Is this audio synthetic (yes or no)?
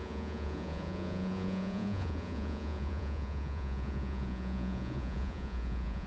yes